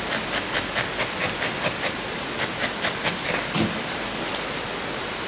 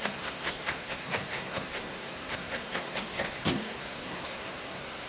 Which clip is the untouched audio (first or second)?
first